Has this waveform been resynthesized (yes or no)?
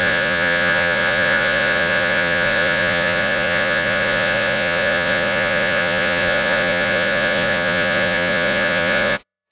yes